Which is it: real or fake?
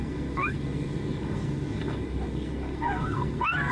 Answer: fake